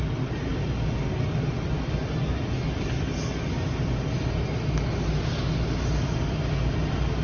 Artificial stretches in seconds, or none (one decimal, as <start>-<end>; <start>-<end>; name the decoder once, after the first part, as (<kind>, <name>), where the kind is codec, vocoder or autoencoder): none